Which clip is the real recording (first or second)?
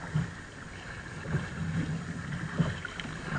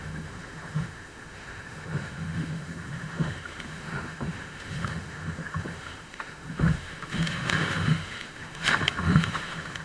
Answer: first